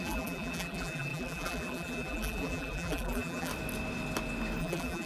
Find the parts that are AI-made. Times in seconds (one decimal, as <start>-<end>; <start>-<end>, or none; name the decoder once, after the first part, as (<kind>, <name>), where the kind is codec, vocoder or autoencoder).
0.0-3.5 (vocoder, BigVGAN v2); 4.6-5.1